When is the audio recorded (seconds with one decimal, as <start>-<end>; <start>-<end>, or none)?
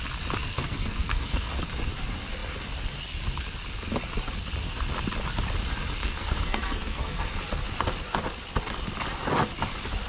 0.0-0.4; 1.5-6.0; 7.3-10.1